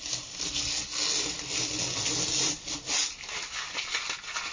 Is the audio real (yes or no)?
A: yes